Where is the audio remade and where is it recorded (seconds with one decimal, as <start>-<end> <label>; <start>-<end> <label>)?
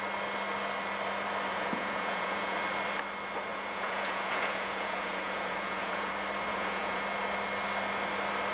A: 0.0-1.5 recorded; 1.5-2.6 remade; 2.6-3.5 recorded; 3.5-6.1 remade; 6.1-6.5 recorded; 6.5-7.0 remade; 7.0-8.5 recorded